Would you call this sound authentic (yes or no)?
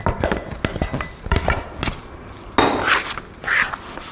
yes